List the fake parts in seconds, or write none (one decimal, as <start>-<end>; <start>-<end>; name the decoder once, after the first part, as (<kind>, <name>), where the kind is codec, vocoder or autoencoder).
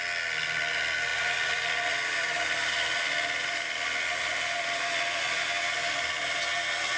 none